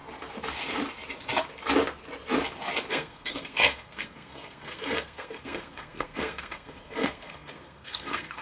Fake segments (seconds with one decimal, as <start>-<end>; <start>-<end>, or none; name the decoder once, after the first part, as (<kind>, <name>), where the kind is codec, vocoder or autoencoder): 2.9-8.4 (codec, SNAC)